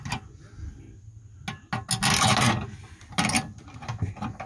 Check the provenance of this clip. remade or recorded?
recorded